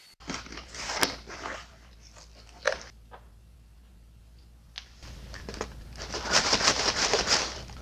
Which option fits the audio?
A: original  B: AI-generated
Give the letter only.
A